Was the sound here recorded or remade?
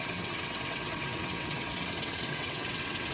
remade